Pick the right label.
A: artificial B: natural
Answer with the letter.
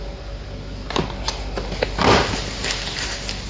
B